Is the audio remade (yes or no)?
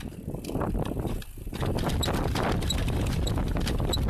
no